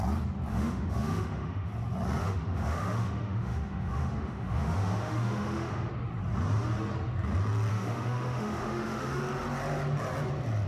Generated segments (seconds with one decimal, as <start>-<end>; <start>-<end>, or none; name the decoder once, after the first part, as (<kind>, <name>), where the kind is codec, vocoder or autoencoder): 0.5-1.7 (autoencoder, DAC-VAE); 2.2-5.9; 7.7-9.2